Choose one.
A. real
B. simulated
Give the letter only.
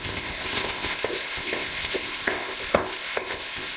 B